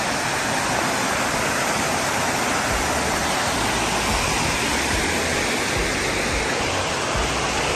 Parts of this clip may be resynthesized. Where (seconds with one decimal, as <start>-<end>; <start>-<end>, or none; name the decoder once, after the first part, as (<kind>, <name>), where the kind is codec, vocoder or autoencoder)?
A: none